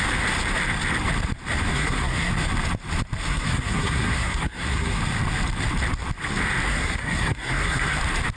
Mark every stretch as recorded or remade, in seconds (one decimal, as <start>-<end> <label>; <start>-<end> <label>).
0.0-1.7 recorded; 1.7-2.3 remade; 2.3-3.3 recorded; 3.3-5.0 remade; 5.0-6.7 recorded; 6.7-8.0 remade; 8.0-8.4 recorded